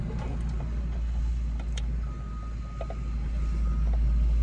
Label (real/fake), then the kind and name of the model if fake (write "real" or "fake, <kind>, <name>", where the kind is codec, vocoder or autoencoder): real